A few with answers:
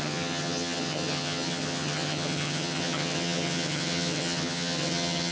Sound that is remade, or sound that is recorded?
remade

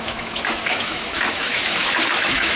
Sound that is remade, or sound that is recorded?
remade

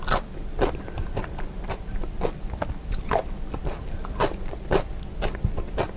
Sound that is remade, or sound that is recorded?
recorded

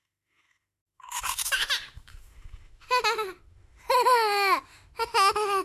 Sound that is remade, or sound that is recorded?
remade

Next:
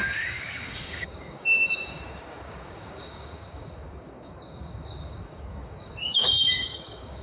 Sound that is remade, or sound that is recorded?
remade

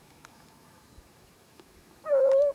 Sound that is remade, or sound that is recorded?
remade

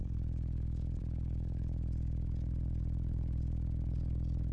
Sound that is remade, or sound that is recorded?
remade